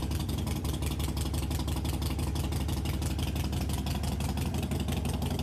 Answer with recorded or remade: recorded